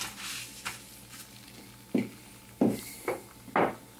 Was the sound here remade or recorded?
recorded